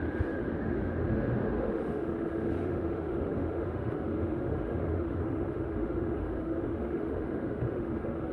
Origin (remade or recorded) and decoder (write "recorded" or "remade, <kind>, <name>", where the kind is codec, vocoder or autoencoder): remade, autoencoder, DAC-VAE